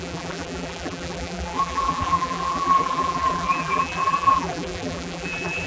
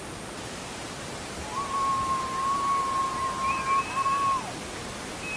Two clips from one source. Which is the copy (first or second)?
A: first